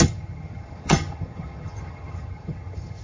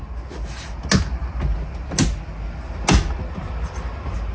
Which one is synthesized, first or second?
first